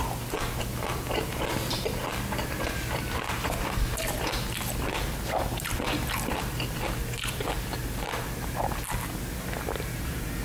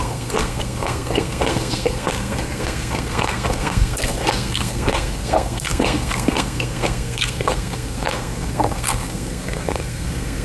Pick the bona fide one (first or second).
first